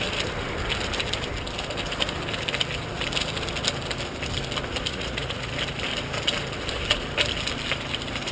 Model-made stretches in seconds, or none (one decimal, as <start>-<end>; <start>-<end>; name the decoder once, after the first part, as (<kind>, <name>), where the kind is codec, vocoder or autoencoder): 4.9-5.5 (vocoder, Vocos)